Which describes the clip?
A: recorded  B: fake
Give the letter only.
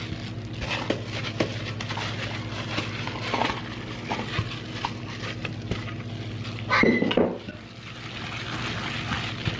A